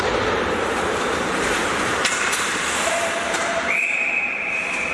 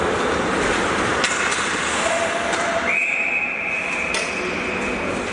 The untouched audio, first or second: second